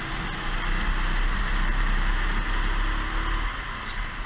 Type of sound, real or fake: real